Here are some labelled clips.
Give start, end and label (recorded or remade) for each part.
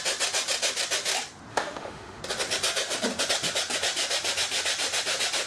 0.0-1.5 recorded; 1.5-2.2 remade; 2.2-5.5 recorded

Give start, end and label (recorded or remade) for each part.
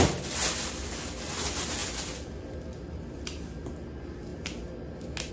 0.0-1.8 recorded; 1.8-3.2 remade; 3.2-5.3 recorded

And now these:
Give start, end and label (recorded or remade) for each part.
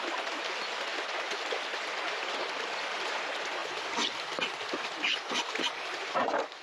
0.0-6.6 recorded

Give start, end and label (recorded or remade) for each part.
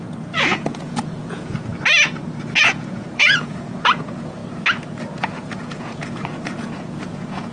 0.0-1.7 remade; 1.7-2.6 recorded; 2.6-4.4 remade; 4.4-5.2 recorded; 5.2-7.5 remade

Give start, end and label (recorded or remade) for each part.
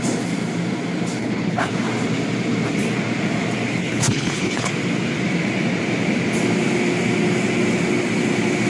0.0-1.2 recorded; 1.2-1.7 remade; 1.7-3.8 recorded; 3.8-4.7 remade; 4.7-8.7 recorded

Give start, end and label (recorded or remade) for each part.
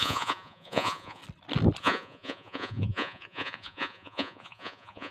0.0-1.2 remade; 1.2-1.8 recorded; 1.8-5.1 remade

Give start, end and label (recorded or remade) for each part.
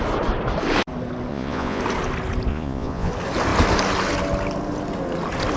0.0-1.3 recorded; 1.3-1.8 remade; 1.8-2.5 recorded; 2.5-3.1 remade; 3.1-5.6 recorded